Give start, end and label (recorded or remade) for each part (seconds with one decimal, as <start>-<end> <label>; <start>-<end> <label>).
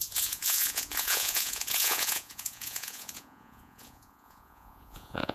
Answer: 0.0-5.3 remade